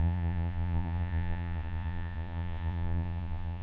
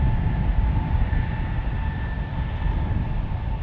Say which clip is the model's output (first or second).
first